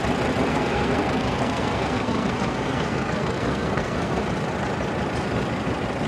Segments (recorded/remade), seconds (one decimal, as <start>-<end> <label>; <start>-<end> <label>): 0.0-0.5 recorded; 0.5-4.2 remade; 4.2-6.1 recorded